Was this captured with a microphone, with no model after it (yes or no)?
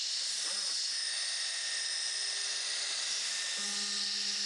yes